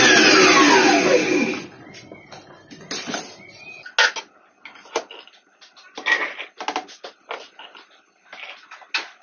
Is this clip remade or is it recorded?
recorded